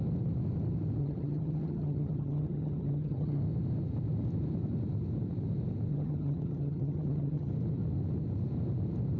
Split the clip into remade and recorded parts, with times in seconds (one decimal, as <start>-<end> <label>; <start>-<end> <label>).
0.0-1.0 recorded; 1.0-3.4 remade; 3.4-5.9 recorded; 5.9-7.5 remade; 7.5-9.2 recorded